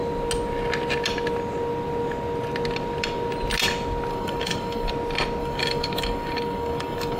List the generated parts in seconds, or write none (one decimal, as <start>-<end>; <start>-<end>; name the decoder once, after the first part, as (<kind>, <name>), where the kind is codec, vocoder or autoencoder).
4.1-4.9 (codec, DAC); 5.4-7.2